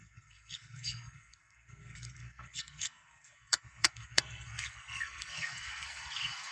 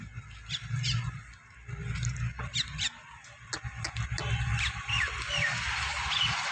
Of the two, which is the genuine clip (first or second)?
second